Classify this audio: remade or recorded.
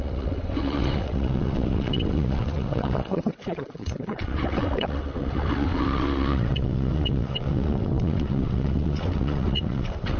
remade